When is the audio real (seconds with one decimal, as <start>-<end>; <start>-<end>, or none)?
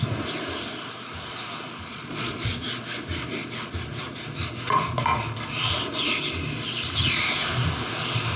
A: 0.0-1.9; 2.8-8.4